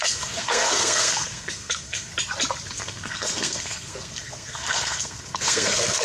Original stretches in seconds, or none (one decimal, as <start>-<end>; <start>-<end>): 2.1-2.7